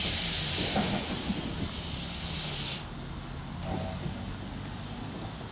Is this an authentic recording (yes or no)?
yes